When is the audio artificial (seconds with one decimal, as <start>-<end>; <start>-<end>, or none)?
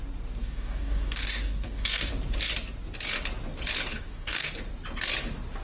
0.4-2.1; 3.9-4.5